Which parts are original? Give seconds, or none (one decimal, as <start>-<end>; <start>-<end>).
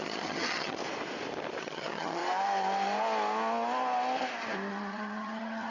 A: 0.8-1.6; 2.2-4.7